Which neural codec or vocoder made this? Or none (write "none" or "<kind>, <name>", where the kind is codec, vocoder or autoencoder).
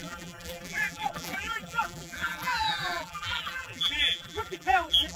vocoder, BigVGAN v2